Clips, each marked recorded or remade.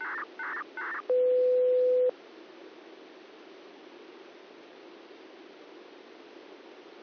recorded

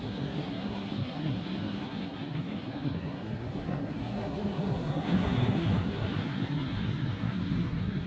remade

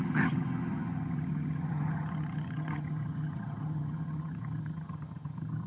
remade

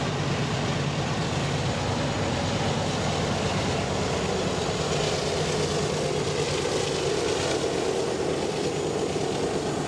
recorded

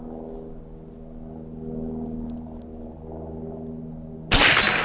recorded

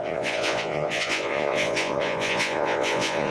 remade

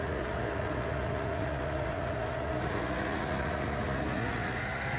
remade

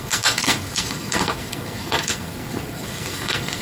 remade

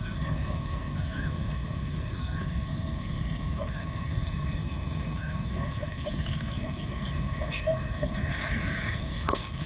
remade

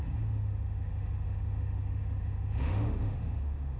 remade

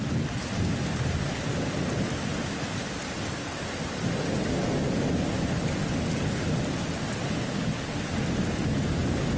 recorded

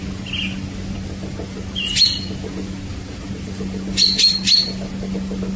recorded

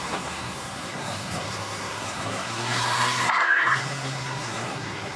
remade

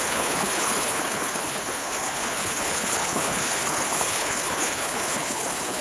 remade